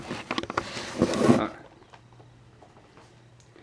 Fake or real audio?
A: real